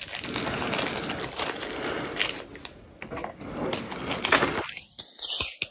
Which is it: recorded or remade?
recorded